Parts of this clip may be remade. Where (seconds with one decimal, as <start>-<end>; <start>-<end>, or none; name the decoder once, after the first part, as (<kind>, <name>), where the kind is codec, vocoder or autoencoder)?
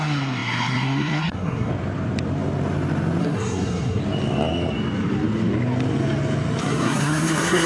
0.0-1.7 (codec, SNAC); 3.2-4.0; 6.6-7.7